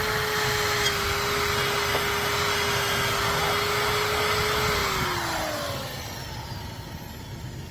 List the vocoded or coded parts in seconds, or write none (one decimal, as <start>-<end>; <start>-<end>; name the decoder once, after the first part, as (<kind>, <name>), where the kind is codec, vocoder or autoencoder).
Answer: none